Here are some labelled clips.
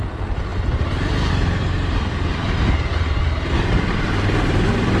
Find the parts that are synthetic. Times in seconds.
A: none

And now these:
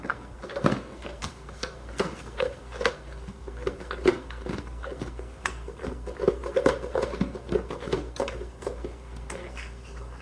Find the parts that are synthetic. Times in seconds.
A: 0.0-10.2 (codec, SNAC)

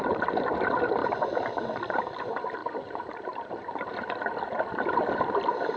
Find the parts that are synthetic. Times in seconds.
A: none

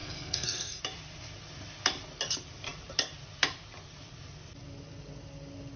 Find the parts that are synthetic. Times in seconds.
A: 0.0-0.8 (codec, SNAC)